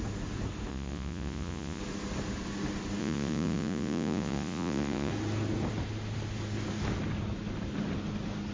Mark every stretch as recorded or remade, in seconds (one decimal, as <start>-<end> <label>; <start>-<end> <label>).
0.0-0.7 recorded; 0.7-1.8 remade; 1.8-3.0 recorded; 3.0-5.1 remade; 5.1-8.5 recorded